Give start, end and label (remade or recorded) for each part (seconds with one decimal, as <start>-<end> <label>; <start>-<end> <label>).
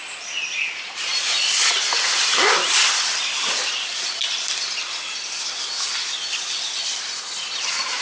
0.0-8.0 recorded